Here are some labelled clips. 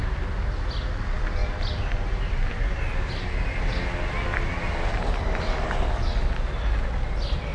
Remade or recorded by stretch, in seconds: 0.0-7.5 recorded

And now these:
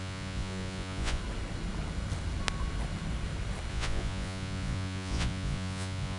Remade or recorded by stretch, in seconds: 0.0-1.2 remade; 1.2-3.7 recorded; 3.7-6.2 remade

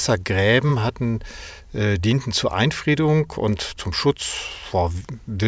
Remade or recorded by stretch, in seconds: 0.0-5.5 recorded

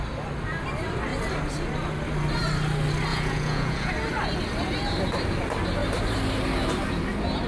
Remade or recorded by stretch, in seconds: 0.0-3.1 recorded; 3.1-3.9 remade; 3.9-7.5 recorded